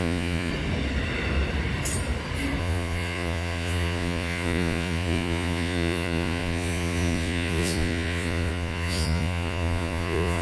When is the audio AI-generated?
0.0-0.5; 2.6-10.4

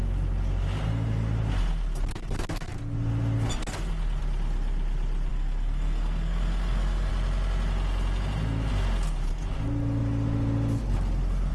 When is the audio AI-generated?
5.3-7.1

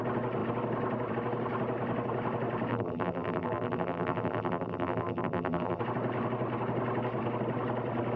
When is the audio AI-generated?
2.7-5.8